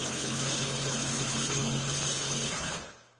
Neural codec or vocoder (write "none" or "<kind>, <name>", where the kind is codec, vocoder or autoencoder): codec, HILCodec